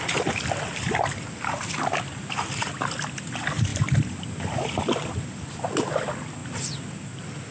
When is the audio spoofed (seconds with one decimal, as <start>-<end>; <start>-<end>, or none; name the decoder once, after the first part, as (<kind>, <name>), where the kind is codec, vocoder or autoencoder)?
none